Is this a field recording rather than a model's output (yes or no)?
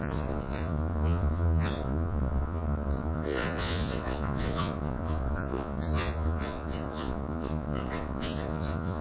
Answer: no